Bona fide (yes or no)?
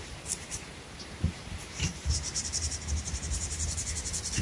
no